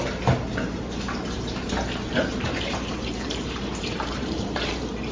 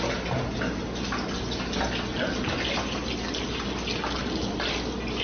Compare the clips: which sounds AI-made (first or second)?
first